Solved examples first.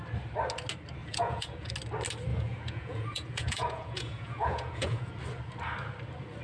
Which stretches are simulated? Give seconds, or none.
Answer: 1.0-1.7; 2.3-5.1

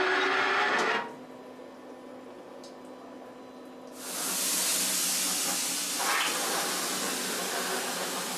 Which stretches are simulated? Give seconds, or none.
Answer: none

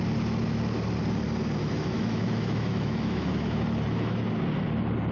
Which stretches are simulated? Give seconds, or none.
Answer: 1.6-4.2

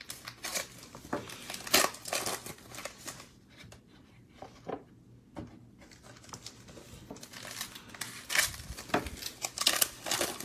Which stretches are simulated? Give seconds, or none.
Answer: 2.8-4.9

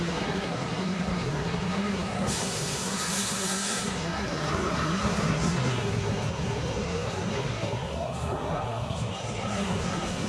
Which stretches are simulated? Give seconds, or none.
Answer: 0.0-10.3

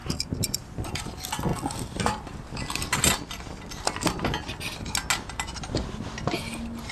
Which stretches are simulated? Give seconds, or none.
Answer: 0.0-0.9